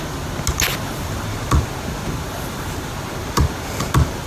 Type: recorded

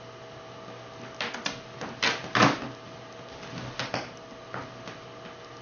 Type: recorded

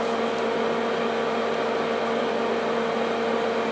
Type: recorded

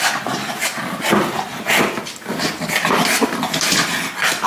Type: recorded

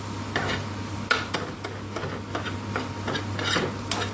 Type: recorded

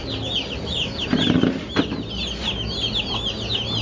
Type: recorded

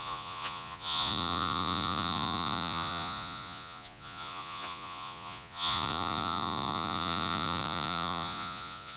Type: remade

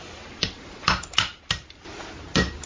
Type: recorded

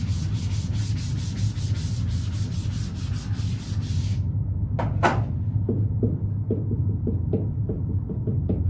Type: recorded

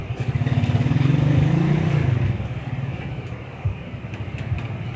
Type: remade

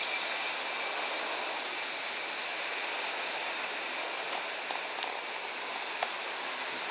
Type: recorded